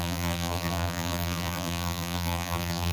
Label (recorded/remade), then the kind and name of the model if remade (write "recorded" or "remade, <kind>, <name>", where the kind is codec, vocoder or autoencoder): remade, vocoder, BigVGAN v2